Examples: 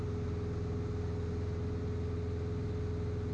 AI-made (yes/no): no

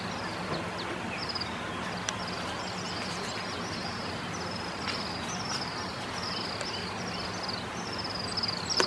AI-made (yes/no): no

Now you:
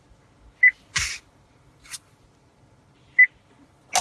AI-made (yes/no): no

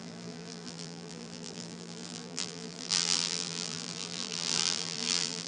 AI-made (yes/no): yes